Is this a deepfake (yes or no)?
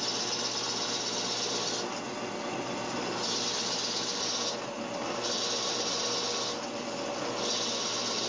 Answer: no